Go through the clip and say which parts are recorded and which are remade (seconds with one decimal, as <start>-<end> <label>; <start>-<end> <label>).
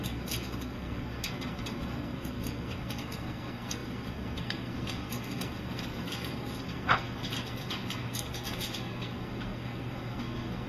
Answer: 0.0-10.7 remade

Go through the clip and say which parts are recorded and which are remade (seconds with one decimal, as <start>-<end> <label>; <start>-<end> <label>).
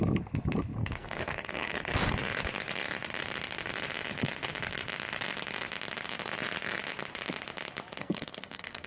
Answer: 0.0-0.8 recorded; 0.8-1.9 remade; 1.9-8.0 recorded; 8.0-8.9 remade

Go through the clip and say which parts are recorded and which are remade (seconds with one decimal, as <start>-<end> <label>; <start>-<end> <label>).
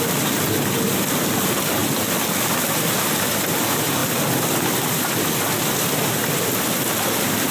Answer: 0.0-7.5 recorded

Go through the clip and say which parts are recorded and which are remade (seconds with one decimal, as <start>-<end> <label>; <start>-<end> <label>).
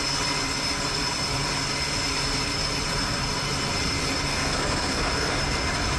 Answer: 0.0-4.3 recorded; 4.3-5.4 remade; 5.4-6.0 recorded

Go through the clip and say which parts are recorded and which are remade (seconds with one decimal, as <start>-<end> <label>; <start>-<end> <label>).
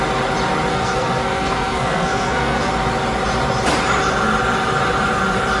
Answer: 0.0-0.7 recorded; 0.7-2.7 remade; 2.7-5.6 recorded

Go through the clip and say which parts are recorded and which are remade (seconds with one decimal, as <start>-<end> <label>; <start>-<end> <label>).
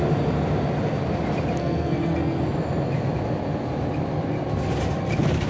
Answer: 0.0-1.6 recorded; 1.6-2.4 remade; 2.4-5.5 recorded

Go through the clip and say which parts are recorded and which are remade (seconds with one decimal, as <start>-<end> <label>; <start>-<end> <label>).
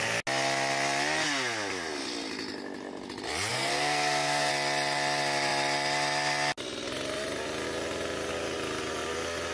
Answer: 0.0-3.5 recorded; 3.5-4.5 remade; 4.5-9.5 recorded